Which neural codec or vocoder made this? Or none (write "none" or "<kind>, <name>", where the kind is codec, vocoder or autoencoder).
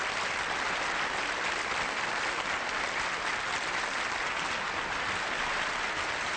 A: none